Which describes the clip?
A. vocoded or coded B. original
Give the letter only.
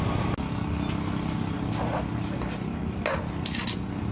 B